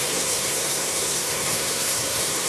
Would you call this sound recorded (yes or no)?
no